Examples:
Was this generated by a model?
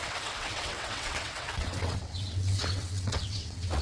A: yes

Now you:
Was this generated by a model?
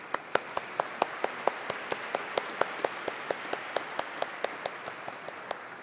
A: no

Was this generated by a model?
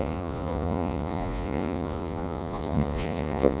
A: yes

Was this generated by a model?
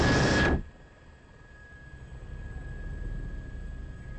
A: no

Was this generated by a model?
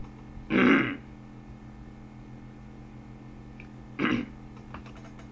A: no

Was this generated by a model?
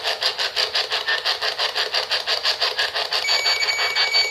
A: no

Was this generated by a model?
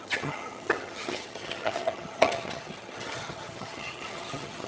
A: yes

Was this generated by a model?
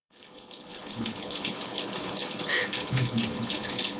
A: yes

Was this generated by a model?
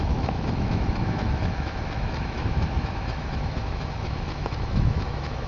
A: yes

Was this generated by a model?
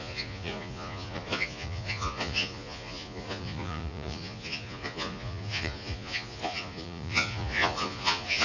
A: yes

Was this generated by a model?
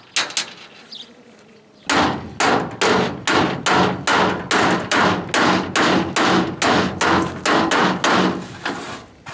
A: no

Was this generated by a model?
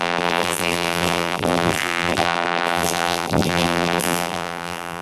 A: yes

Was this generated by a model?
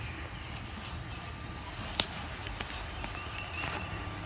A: no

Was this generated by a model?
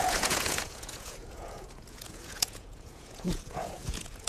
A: yes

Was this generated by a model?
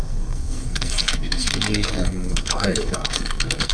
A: yes